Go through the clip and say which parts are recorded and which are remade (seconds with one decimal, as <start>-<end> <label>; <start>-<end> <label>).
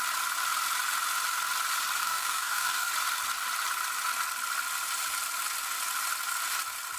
0.0-2.0 recorded; 2.0-2.9 remade; 2.9-7.0 recorded